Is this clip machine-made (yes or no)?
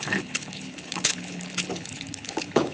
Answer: yes